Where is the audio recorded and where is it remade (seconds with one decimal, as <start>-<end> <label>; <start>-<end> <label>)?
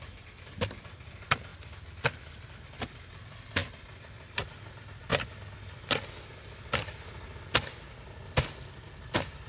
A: 0.0-9.5 recorded